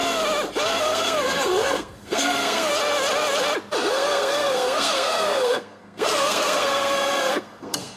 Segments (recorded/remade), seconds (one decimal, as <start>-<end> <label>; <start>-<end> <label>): 0.0-0.8 recorded; 0.8-2.7 remade; 2.7-3.9 recorded; 3.9-8.0 remade